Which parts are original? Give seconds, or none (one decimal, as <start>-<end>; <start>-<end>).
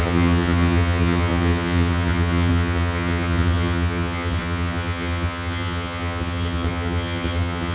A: none